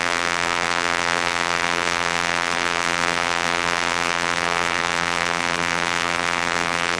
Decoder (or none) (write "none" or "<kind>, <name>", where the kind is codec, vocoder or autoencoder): vocoder, BigVGAN v2